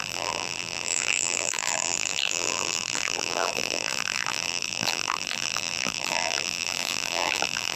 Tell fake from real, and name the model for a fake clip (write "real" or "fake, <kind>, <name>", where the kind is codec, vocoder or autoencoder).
fake, vocoder, BigVGAN v2